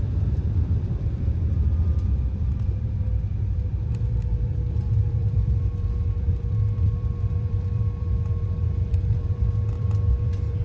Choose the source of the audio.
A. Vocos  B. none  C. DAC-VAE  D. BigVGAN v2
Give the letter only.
D